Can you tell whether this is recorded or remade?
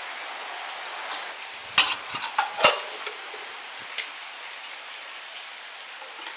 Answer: recorded